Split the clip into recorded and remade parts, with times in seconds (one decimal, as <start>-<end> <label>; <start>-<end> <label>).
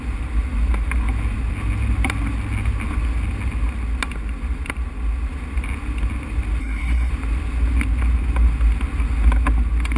0.0-6.6 recorded; 6.6-7.1 remade; 7.1-10.0 recorded